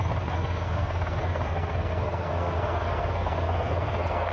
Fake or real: fake